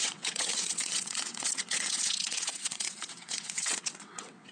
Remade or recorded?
remade